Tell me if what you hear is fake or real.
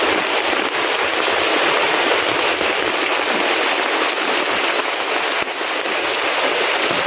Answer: real